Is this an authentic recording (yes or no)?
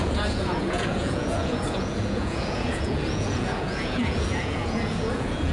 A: no